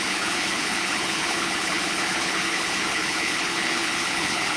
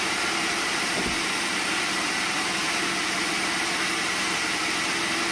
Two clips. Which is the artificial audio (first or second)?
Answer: first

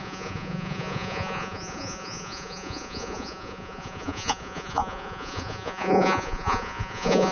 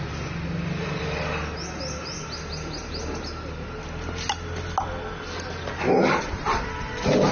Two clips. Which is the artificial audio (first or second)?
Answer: first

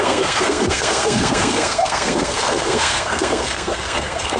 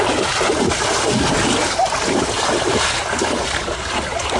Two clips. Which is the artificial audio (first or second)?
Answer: first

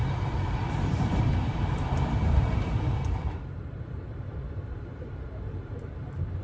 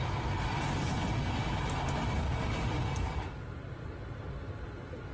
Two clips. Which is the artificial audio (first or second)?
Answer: first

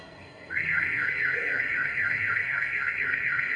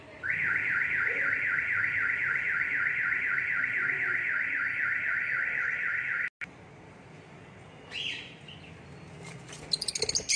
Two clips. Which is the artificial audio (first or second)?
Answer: first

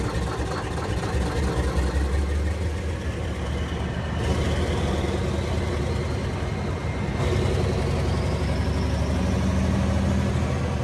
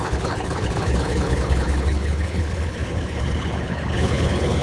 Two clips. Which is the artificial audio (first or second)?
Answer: second